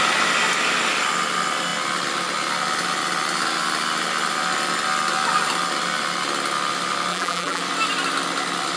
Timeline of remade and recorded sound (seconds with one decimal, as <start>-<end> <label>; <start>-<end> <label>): 0.0-7.1 recorded; 7.1-7.6 remade; 7.6-8.8 recorded